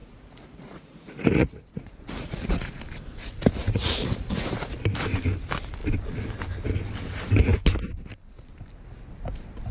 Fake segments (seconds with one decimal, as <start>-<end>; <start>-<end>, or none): 0.0-2.8; 3.6-4.8